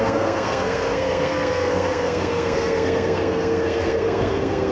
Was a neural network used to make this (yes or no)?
yes